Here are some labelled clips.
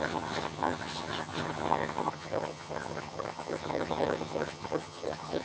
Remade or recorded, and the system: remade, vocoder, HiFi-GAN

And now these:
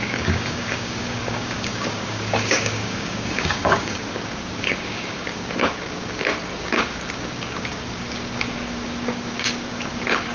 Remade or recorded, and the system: remade, codec, DAC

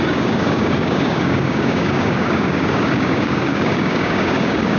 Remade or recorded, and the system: remade, codec, DAC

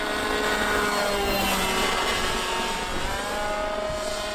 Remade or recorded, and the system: recorded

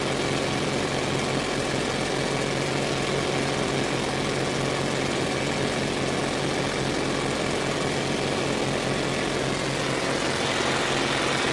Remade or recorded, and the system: recorded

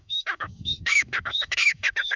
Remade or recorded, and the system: remade, autoencoder, DAC-VAE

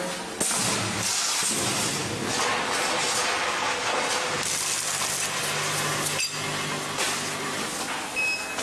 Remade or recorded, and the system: recorded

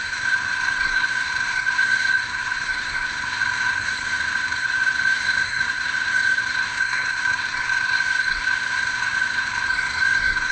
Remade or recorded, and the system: remade, codec, SNAC